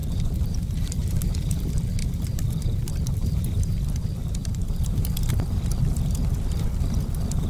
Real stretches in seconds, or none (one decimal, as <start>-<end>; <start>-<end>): 1.6-2.0; 3.8-4.4; 5.3-7.5